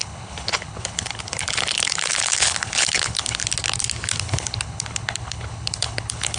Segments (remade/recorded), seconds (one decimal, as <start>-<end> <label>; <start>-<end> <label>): 0.0-3.4 remade; 3.4-4.2 recorded; 4.2-6.4 remade